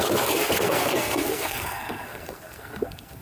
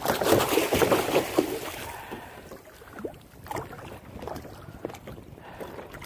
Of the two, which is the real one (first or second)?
second